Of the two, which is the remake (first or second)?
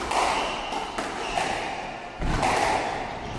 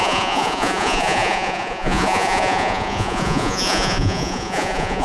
second